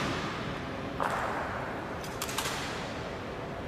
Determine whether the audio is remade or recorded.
remade